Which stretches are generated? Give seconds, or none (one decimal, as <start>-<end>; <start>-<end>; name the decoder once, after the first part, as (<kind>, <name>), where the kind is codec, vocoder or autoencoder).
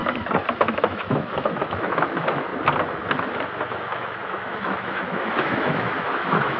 0.6-2.5 (autoencoder, DAC-VAE); 3.7-6.6